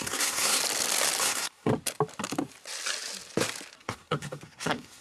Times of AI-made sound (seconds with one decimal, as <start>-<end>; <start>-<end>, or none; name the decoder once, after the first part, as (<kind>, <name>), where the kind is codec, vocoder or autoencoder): 0.0-0.6 (codec, SNAC); 1.2-1.7; 3.8-5.0